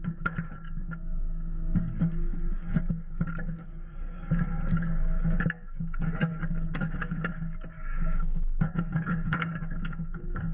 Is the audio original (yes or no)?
no